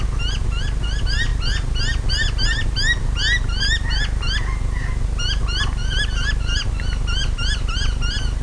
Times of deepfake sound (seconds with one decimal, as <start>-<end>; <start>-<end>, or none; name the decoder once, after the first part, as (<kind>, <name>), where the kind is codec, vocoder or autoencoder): none